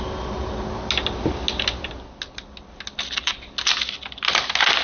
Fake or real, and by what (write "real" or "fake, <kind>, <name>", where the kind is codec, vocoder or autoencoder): real